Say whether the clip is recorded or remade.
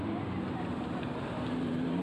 remade